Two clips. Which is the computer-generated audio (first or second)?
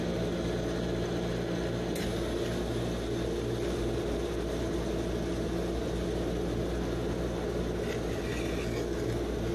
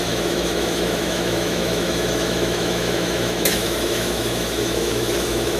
second